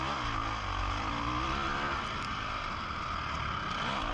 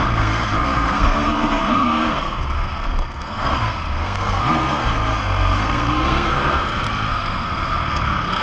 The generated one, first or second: second